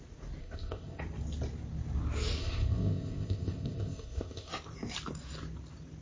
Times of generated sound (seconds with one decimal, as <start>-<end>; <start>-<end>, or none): 0.4-1.0; 2.4-4.5